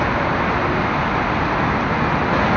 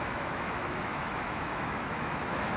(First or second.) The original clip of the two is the first